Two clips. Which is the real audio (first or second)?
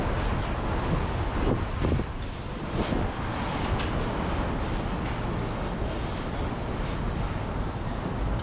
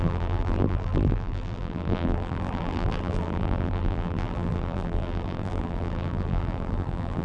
first